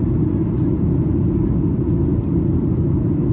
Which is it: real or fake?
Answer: real